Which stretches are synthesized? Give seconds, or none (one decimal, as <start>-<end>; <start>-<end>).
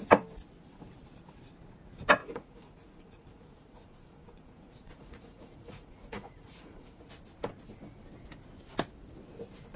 2.2-7.1